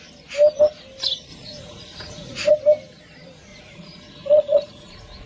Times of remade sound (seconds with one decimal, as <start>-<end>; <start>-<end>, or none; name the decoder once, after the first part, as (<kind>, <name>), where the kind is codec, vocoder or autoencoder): 1.3-2.5 (vocoder, Vocos); 3.5-5.3